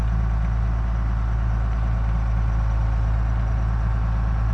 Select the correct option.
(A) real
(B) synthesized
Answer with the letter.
A